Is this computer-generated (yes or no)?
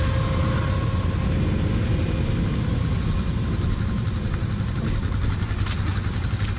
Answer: no